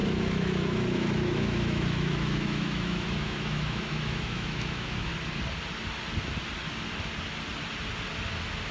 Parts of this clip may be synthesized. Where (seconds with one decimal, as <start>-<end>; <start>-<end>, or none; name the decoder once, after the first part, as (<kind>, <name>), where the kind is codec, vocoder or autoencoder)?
0.0-5.1 (autoencoder, DAC-VAE)